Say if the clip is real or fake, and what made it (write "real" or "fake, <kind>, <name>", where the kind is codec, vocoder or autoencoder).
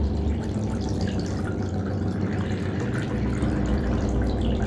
fake, vocoder, BigVGAN v2